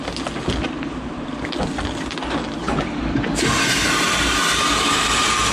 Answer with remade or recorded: recorded